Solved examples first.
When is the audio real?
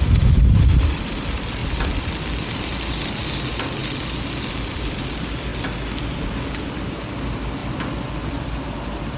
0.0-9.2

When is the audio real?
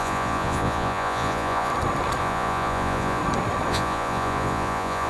1.7-2.2; 3.2-3.7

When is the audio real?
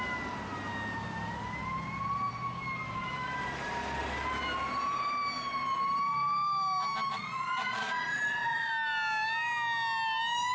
0.0-7.1; 8.7-10.5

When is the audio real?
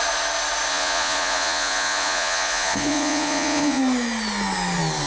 0.0-0.7; 3.8-5.1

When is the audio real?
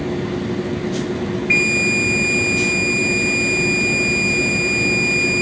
0.0-5.4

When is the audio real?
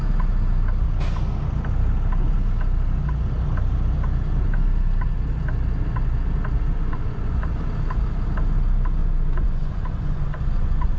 0.0-6.7; 7.6-9.0